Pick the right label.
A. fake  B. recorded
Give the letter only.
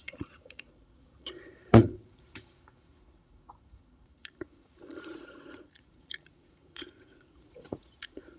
A